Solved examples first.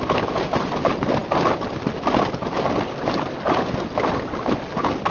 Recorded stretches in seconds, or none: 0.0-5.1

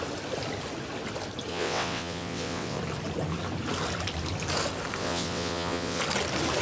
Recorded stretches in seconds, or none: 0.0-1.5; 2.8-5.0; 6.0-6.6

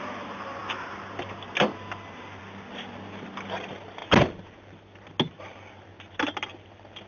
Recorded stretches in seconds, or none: 0.0-7.1

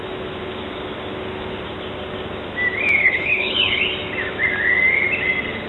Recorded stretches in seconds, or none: 0.0-3.0; 3.8-5.7

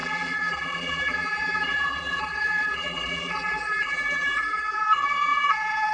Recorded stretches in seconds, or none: none